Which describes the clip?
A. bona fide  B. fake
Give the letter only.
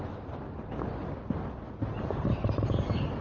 A